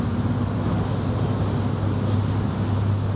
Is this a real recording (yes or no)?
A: yes